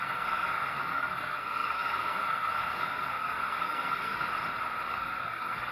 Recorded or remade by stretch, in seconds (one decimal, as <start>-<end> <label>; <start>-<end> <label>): 0.0-4.3 remade; 4.3-4.9 recorded; 4.9-5.7 remade